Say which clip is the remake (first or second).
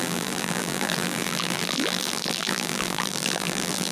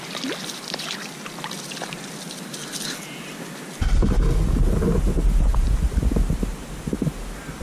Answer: first